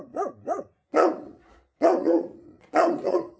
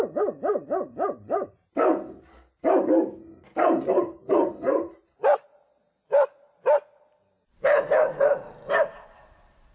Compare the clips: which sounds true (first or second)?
second